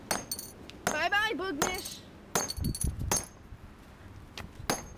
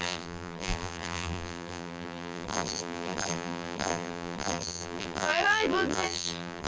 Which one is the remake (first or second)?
second